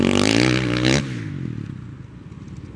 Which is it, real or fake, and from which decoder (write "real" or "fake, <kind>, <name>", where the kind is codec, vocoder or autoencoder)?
real